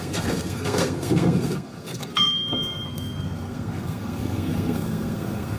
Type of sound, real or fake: fake